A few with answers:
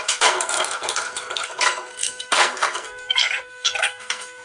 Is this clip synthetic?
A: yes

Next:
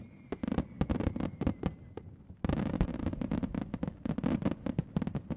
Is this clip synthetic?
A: no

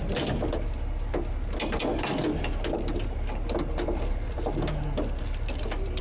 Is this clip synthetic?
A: no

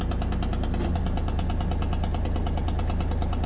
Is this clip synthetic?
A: no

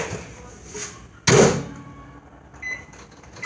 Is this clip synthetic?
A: no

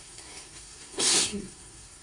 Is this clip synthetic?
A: yes